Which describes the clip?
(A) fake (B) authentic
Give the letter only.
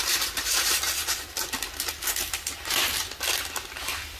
B